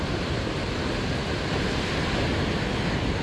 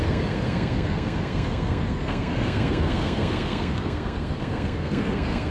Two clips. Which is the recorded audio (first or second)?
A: first